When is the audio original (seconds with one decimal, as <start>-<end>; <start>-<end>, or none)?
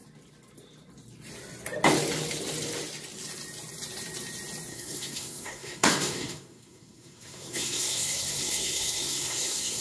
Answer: 0.0-4.7